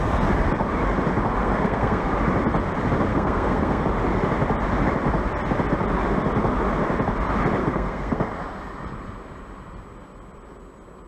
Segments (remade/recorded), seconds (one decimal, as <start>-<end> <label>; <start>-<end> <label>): 0.0-1.4 recorded; 1.4-2.1 remade; 2.1-3.1 recorded; 3.1-3.8 remade; 3.8-7.6 recorded; 7.6-8.3 remade; 8.3-11.1 recorded